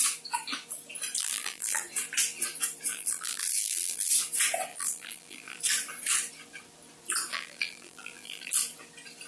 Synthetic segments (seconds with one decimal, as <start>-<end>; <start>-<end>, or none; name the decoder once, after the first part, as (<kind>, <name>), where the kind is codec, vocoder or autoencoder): 1.2-1.8 (vocoder, BigVGAN v2); 2.9-4.1; 4.7-5.6; 7.3-8.5